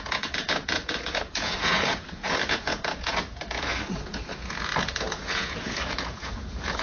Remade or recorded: remade